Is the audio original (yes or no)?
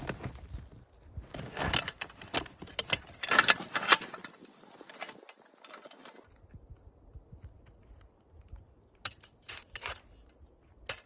yes